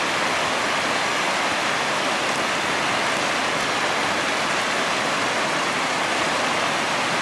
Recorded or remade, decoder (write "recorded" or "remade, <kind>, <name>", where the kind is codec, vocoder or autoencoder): recorded